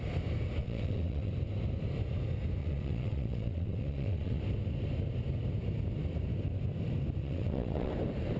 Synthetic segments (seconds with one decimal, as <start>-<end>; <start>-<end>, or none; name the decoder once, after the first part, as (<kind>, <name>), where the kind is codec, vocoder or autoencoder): 0.6-1.3 (vocoder, WaveNeXt); 2.6-4.4; 7.2-7.9